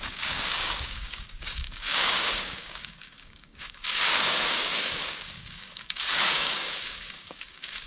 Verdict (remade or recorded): remade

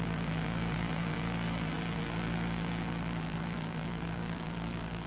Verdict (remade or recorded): remade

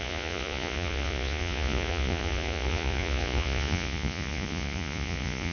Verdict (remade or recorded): remade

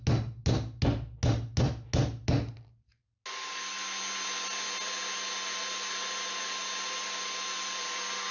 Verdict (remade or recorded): recorded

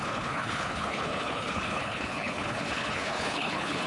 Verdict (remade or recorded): remade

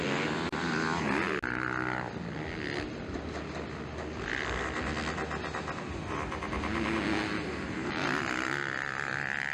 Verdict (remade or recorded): recorded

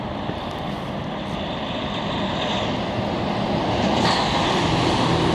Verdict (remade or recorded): recorded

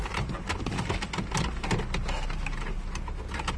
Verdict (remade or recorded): recorded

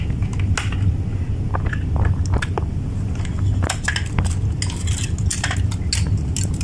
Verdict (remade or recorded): recorded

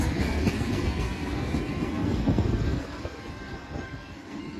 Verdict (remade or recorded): remade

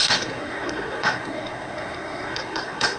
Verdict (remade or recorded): remade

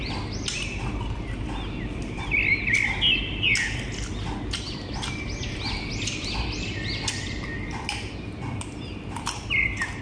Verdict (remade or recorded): recorded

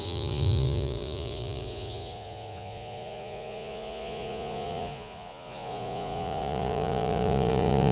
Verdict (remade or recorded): remade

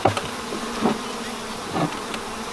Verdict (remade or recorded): recorded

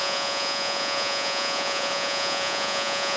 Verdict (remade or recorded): remade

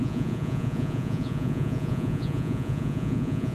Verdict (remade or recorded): remade